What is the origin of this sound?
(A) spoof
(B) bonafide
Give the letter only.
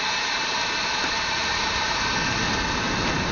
B